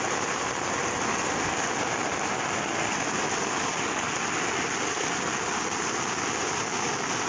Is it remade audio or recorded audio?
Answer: recorded